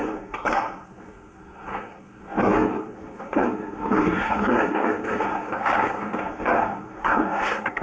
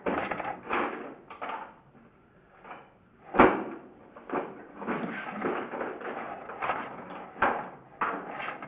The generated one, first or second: first